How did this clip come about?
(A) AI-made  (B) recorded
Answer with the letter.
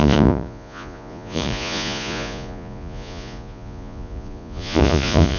A